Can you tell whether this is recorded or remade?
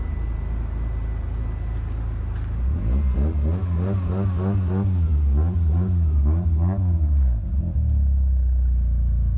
recorded